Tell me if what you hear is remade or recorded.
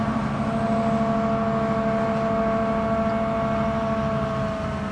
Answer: recorded